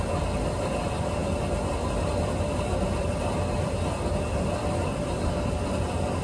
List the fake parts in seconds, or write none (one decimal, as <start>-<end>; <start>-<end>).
none